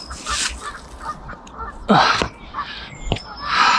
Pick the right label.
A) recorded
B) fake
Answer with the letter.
A